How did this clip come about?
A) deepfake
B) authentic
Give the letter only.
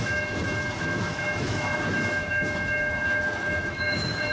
A